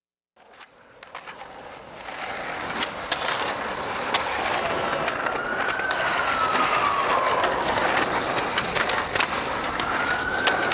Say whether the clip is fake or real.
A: real